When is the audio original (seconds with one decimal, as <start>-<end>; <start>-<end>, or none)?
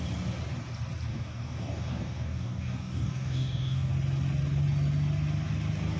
0.0-1.1; 3.9-6.0